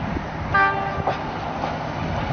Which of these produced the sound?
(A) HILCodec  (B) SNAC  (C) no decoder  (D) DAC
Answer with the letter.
C